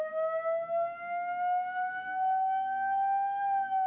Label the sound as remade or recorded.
remade